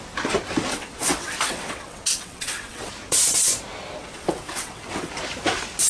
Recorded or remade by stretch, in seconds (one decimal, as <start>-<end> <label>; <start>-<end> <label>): 0.0-0.7 recorded; 0.7-2.9 remade; 2.9-4.0 recorded; 4.0-5.1 remade; 5.1-5.9 recorded